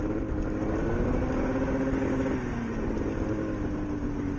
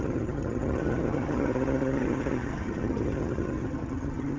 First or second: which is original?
first